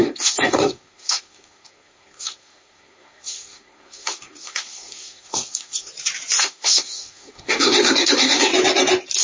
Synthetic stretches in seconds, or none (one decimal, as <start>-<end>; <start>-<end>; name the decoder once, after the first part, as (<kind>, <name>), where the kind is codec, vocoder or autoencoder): 0.0-5.9 (codec, SNAC); 6.4-8.5